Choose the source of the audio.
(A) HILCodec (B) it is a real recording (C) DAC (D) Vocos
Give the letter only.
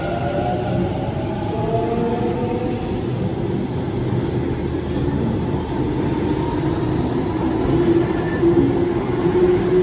B